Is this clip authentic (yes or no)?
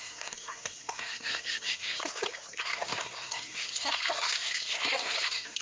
no